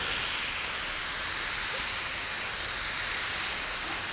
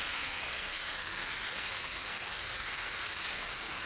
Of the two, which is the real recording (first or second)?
first